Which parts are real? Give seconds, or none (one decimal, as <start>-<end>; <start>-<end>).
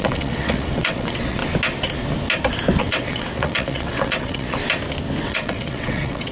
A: 1.4-2.8; 4.6-5.2